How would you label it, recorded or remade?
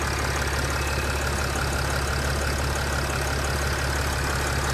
recorded